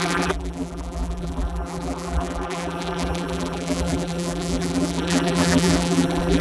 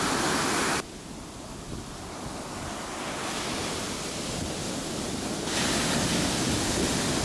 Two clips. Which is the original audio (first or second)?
second